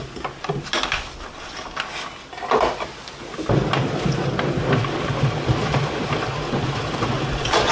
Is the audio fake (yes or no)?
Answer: no